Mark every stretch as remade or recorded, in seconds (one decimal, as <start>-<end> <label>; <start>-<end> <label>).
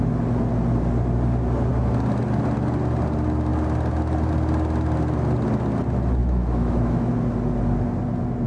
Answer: 0.0-6.2 recorded; 6.2-7.1 remade; 7.1-8.5 recorded